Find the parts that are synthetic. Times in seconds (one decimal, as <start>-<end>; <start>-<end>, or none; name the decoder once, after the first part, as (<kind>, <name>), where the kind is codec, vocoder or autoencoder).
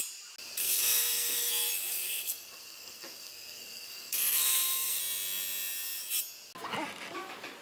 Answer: 0.6-1.5 (codec, SNAC); 1.9-5.0